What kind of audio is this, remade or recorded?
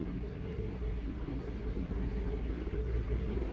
remade